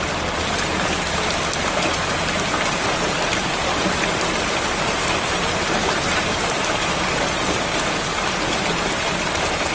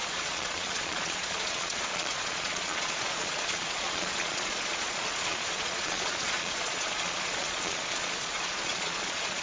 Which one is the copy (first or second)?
second